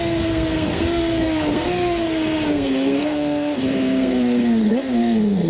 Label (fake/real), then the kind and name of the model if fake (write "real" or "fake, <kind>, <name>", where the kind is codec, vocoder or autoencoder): fake, codec, SNAC